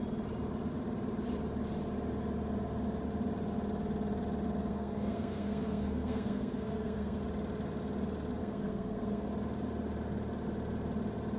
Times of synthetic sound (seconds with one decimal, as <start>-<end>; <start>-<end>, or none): 4.7-7.2; 8.4-9.3